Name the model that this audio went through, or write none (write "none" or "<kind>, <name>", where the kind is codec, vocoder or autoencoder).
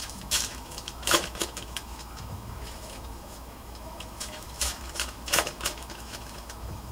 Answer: autoencoder, DAC-VAE